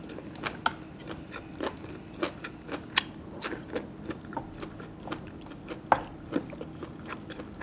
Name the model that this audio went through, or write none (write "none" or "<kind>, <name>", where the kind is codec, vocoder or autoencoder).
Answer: none